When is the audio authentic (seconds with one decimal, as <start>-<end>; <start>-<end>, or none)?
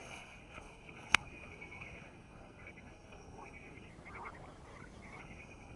3.9-5.2